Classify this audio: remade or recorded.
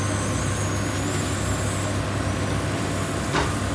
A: recorded